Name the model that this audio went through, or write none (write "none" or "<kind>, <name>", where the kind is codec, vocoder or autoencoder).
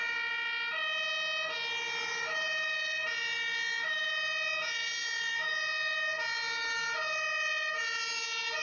none